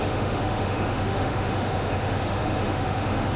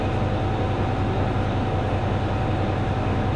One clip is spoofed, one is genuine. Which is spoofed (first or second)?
first